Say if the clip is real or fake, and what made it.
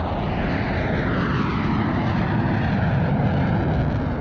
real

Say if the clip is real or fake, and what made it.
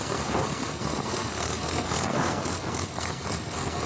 fake, codec, SNAC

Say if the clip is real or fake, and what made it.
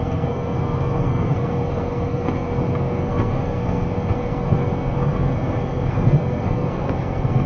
fake, codec, SNAC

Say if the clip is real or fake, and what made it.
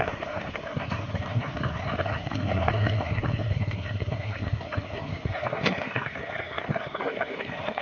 fake, codec, SNAC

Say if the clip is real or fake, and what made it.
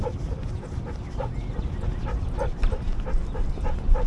real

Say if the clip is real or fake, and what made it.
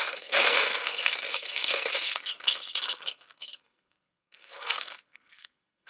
fake, codec, SNAC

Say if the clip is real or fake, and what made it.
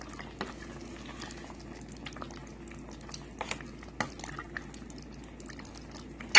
real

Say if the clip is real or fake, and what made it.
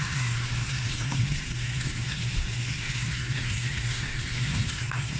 fake, codec, SNAC